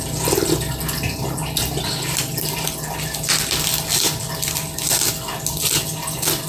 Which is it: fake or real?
real